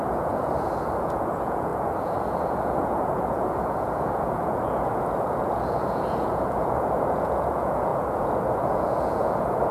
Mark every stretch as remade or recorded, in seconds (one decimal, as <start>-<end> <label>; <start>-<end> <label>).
0.0-9.7 remade